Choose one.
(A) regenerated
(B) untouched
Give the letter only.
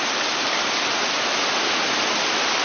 B